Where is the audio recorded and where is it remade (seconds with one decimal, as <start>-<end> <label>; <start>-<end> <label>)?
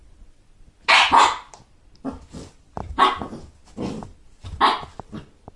0.0-5.6 recorded